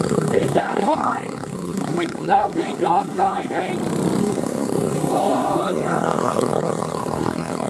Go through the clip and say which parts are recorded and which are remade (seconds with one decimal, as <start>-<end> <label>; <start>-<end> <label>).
0.0-3.7 remade; 3.7-4.2 recorded; 4.2-7.7 remade